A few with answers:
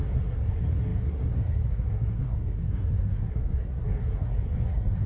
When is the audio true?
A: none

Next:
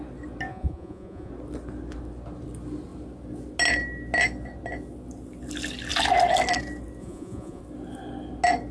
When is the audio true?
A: 0.0-0.5; 1.3-7.0; 7.6-8.7

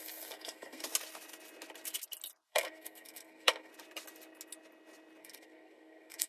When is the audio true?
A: 0.8-2.5; 3.7-5.2

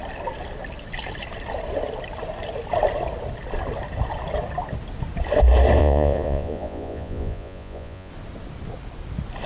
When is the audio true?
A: 0.0-5.8; 8.1-9.5

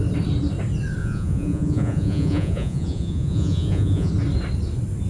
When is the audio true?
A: 0.0-1.0; 4.1-5.1

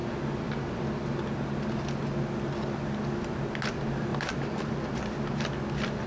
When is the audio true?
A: 1.2-4.1; 4.7-6.1

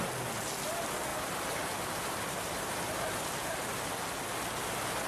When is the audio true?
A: 0.0-1.1; 3.8-5.1